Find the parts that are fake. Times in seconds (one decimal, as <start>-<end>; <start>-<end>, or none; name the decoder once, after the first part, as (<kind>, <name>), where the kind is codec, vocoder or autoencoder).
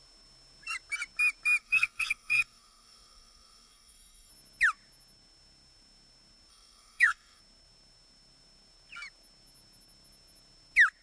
1.6-4.3 (codec, SNAC); 6.5-7.4